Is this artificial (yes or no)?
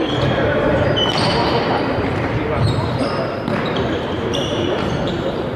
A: yes